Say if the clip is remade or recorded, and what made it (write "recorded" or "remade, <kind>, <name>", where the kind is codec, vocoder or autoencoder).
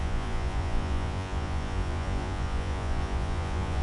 remade, vocoder, Vocos